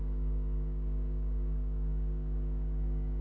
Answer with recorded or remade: remade